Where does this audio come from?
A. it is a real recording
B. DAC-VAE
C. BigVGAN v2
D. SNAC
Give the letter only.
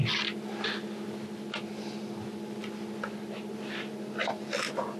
A